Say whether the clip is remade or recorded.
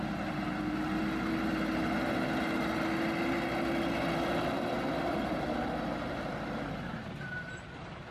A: recorded